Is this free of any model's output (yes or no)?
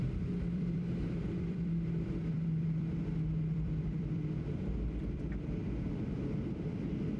no